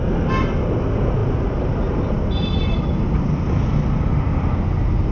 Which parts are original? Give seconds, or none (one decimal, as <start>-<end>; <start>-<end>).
0.0-5.1